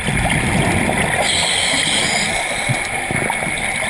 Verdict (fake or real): real